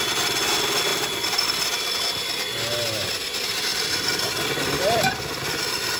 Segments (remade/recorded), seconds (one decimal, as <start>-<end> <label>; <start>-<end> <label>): 0.0-0.9 recorded; 0.9-1.6 remade; 1.6-3.7 recorded; 3.7-6.0 remade